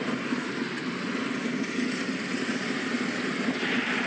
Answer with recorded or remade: recorded